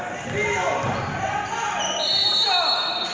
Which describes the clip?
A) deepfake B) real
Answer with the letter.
B